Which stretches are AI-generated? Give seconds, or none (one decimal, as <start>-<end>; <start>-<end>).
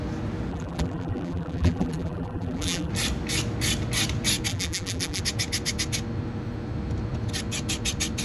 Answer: 0.5-2.9; 4.5-5.2